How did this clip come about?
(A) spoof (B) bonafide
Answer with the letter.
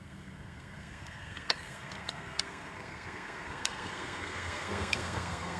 A